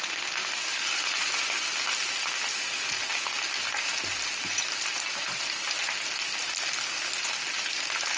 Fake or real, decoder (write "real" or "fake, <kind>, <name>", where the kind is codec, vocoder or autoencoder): real